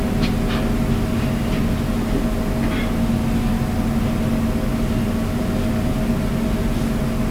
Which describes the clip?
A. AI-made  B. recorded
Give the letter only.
B